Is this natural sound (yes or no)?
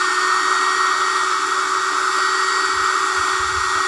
yes